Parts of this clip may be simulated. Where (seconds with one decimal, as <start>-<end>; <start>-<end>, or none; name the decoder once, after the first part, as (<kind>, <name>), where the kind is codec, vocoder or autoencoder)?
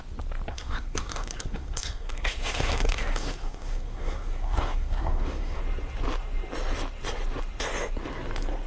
0.5-5.6 (codec, SNAC)